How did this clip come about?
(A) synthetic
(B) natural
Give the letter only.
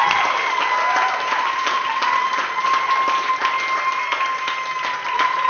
B